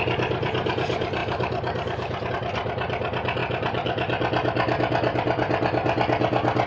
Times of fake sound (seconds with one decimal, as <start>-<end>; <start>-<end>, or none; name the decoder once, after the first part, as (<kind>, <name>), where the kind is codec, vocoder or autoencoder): none